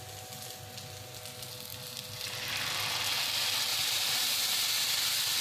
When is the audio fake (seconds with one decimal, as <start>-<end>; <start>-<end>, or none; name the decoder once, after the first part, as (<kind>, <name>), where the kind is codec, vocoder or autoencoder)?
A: 3.7-4.3 (vocoder, BigVGAN v2)